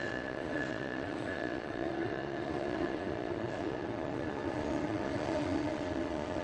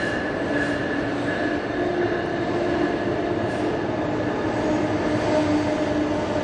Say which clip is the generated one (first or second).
first